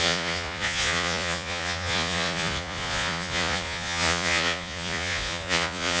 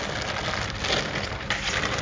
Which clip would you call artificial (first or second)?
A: first